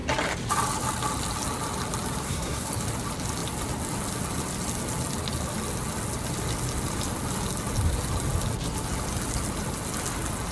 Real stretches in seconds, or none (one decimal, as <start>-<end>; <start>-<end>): 0.0-2.2; 2.7-10.5